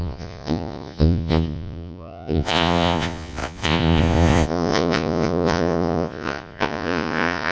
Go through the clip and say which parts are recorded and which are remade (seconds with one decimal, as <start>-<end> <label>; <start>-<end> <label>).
0.0-7.5 remade